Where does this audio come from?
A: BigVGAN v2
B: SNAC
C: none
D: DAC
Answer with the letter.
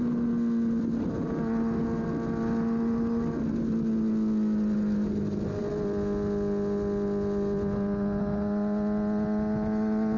C